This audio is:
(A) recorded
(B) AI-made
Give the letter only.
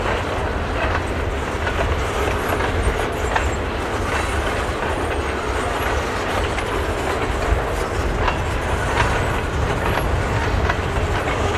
A